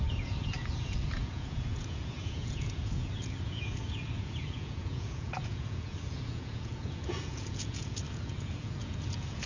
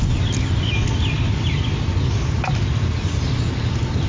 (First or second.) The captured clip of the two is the second